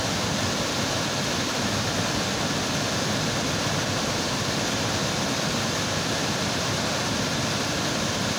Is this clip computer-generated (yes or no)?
yes